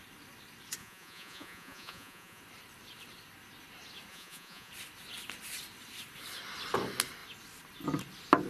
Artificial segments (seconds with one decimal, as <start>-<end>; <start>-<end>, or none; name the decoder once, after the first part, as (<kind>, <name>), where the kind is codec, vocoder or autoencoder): 0.8-2.4 (vocoder, Vocos); 4.1-4.7